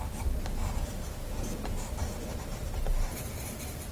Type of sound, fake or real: real